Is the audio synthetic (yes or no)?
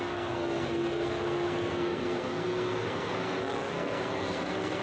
yes